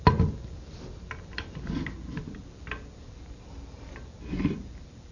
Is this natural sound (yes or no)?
yes